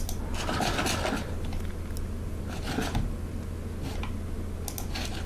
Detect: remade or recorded recorded